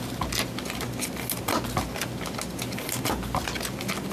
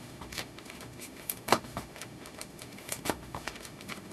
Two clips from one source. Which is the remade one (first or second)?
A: second